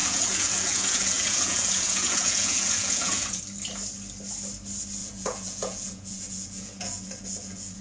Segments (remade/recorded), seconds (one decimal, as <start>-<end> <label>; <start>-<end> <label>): 0.0-3.4 remade; 3.4-5.0 recorded; 5.0-7.8 remade